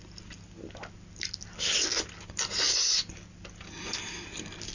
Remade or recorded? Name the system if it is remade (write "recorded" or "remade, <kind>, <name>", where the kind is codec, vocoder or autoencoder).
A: recorded